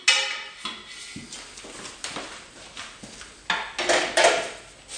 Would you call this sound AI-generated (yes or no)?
no